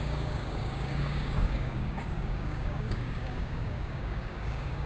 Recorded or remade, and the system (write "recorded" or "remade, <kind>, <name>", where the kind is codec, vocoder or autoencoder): remade, codec, DAC